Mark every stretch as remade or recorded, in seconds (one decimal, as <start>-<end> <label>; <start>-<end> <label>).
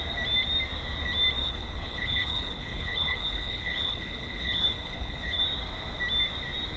0.0-1.4 recorded; 1.4-5.4 remade; 5.4-6.8 recorded